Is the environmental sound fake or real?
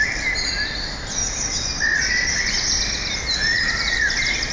real